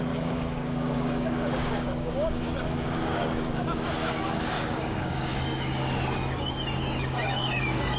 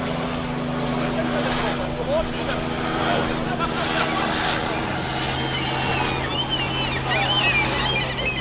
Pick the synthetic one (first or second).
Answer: first